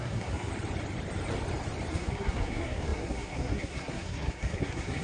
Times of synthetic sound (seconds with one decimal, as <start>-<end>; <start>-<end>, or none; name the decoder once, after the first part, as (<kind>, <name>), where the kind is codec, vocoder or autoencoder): 0.0-0.5 (codec, SNAC); 1.9-5.0